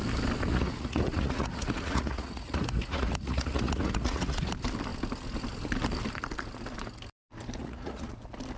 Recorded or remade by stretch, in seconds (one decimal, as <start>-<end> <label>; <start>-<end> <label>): 0.0-0.5 recorded; 0.5-4.5 remade; 4.5-7.6 recorded; 7.6-8.1 remade; 8.1-8.6 recorded